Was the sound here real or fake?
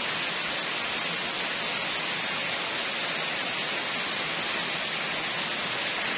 real